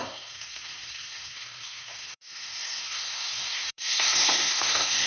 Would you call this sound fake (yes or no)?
yes